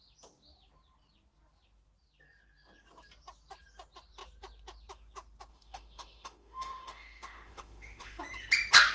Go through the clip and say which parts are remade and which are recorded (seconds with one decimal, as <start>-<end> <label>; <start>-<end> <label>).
0.0-5.5 recorded; 5.5-8.2 remade; 8.2-8.9 recorded